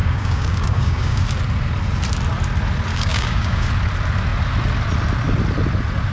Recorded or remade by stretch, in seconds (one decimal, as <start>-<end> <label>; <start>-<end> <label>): 0.0-1.2 remade; 1.2-2.9 recorded; 2.9-3.7 remade; 3.7-6.1 recorded